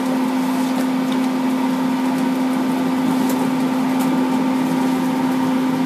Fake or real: real